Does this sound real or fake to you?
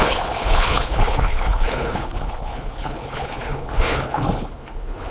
fake